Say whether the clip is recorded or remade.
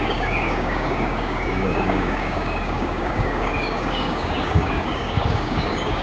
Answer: remade